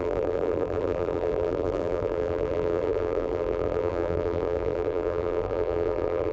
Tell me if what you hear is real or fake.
fake